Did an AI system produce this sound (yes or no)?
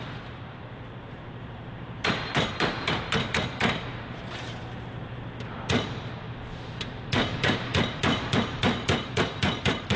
yes